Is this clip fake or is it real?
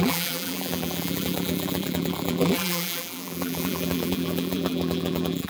fake